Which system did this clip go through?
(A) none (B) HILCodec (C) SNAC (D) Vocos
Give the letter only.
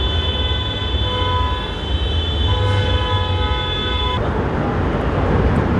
A